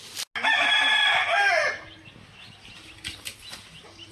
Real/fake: real